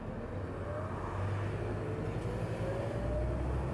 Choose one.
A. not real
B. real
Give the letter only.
B